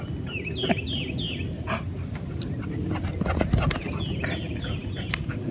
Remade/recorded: recorded